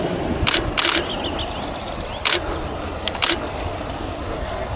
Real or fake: real